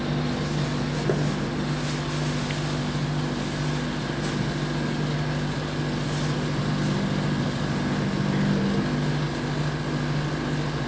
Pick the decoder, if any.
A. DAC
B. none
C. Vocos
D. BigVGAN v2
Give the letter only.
B